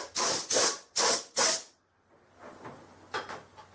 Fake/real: real